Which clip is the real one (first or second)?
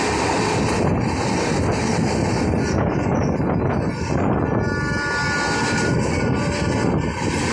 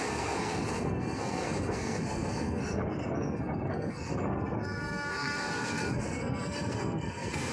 first